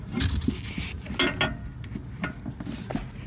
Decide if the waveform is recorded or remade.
recorded